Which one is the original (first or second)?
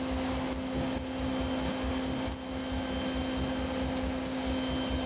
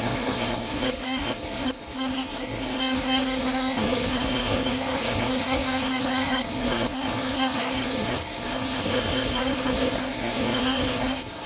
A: first